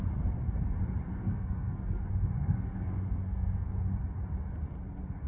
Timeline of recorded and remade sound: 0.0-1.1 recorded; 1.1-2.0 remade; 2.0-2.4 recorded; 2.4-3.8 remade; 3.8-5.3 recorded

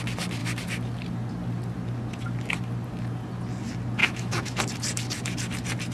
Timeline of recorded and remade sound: 0.0-4.0 recorded; 4.0-4.6 remade; 4.6-5.9 recorded

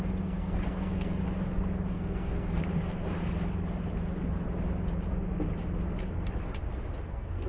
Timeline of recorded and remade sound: 0.0-1.2 remade; 1.2-1.9 recorded; 1.9-2.6 remade; 2.6-7.1 recorded; 7.1-7.5 remade